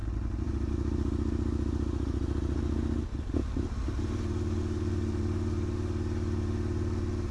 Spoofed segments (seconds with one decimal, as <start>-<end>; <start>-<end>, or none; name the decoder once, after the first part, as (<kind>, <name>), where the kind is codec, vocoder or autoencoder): 0.0-0.7 (vocoder, BigVGAN v2)